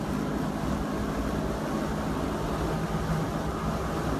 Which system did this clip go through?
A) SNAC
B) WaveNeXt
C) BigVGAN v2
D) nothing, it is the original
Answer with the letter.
D